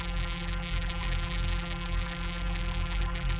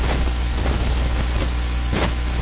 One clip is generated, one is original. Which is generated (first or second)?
first